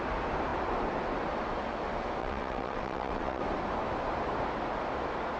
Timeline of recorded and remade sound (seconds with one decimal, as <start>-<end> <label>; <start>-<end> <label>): 0.0-2.2 recorded; 2.2-3.4 remade; 3.4-5.4 recorded